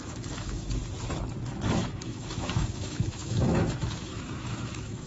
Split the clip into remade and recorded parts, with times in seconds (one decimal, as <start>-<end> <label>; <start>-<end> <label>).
0.0-0.8 remade; 0.8-1.8 recorded; 1.8-5.1 remade